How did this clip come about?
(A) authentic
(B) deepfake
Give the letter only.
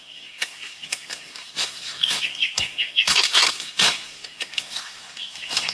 B